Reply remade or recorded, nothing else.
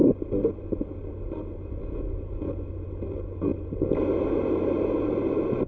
recorded